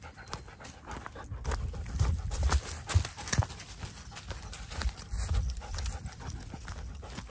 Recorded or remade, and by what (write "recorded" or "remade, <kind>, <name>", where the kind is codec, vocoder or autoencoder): recorded